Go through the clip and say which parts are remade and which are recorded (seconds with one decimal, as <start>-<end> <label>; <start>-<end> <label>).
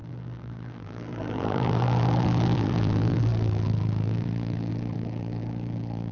0.0-6.1 remade